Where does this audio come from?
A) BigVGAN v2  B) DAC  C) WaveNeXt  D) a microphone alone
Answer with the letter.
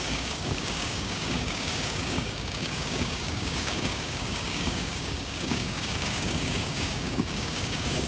B